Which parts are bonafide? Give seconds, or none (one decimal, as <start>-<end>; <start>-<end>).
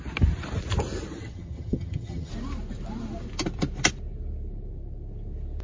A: 0.0-1.2; 2.3-5.6